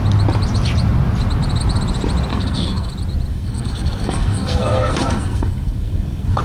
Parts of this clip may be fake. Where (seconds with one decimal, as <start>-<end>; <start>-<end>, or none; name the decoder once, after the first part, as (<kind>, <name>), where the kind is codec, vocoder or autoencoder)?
2.3-2.9 (codec, SNAC); 3.3-6.4